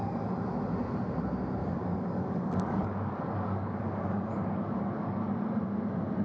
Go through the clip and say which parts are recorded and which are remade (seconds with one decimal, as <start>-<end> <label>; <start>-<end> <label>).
0.0-1.6 recorded; 1.6-5.3 remade; 5.3-6.2 recorded